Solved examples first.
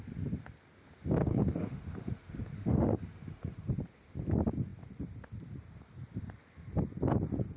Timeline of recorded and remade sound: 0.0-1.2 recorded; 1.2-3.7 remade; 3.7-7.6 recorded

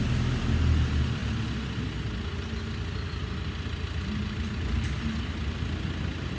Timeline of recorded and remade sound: 0.0-6.4 recorded

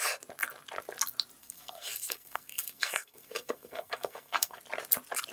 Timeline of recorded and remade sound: 0.0-1.4 recorded; 1.4-4.6 remade; 4.6-5.3 recorded